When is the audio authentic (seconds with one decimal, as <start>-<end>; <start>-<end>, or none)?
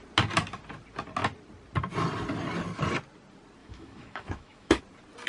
0.0-3.6; 4.8-5.3